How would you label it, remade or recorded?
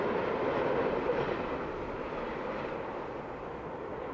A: recorded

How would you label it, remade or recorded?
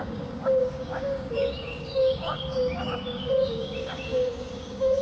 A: remade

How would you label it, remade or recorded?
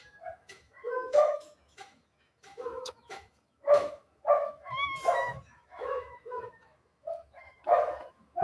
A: remade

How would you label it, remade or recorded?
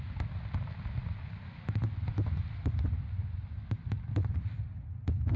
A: recorded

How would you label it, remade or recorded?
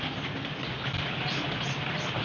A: recorded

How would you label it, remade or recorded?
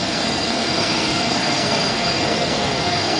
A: remade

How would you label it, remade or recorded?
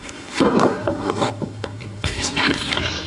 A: remade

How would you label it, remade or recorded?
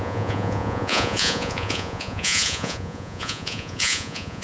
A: remade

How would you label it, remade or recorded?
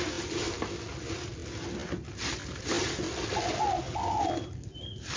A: recorded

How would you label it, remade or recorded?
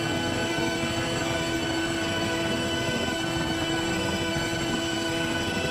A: remade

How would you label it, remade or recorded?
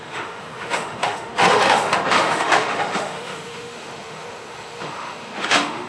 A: remade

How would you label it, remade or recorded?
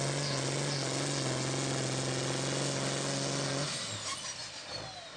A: recorded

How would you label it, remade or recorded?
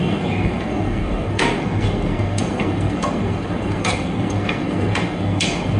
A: remade